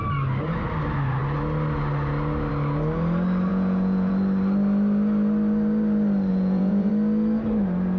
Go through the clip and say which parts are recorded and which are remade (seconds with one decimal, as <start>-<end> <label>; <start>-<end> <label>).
0.0-3.5 recorded; 3.5-4.1 remade; 4.1-6.3 recorded; 6.3-6.9 remade; 6.9-8.0 recorded